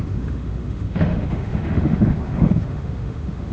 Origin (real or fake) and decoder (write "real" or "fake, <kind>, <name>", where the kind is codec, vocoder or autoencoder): fake, autoencoder, DAC-VAE